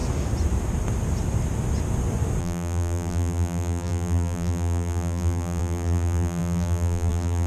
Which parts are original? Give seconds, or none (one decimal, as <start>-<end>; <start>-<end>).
0.0-2.4